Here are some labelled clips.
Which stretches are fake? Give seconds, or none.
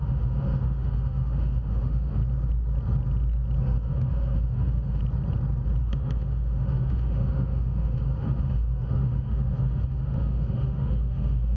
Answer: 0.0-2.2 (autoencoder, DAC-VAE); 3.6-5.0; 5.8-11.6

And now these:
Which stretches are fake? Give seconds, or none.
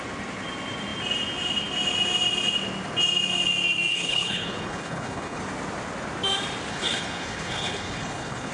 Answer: 3.9-5.4 (codec, HILCodec); 6.7-8.5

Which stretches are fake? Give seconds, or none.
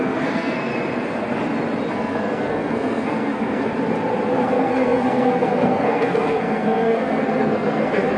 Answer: 0.0-0.7 (codec, SNAC); 1.9-3.7; 4.3-8.2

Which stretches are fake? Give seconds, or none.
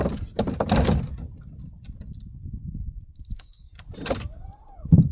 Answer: 2.6-3.7 (codec, DAC)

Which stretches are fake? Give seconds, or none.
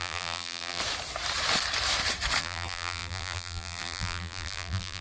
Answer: 0.0-0.8 (vocoder, BigVGAN v2); 2.4-5.0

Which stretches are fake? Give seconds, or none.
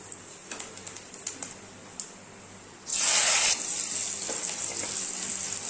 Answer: none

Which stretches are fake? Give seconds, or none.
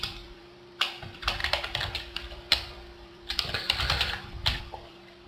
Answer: 0.0-5.3 (vocoder, BigVGAN v2)